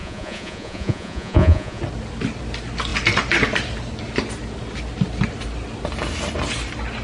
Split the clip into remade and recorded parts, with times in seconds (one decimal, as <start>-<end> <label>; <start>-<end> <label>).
0.0-1.8 remade; 1.8-7.0 recorded